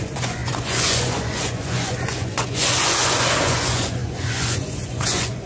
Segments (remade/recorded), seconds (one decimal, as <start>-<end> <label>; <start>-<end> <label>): 0.0-5.5 remade